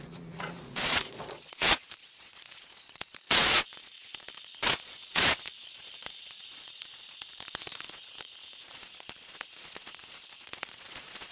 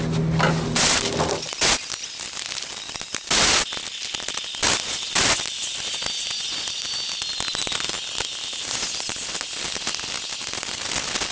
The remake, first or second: first